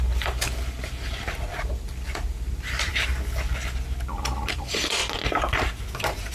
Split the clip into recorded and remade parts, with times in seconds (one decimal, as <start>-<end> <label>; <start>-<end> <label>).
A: 0.0-2.9 remade; 2.9-4.5 recorded; 4.5-5.0 remade; 5.0-6.3 recorded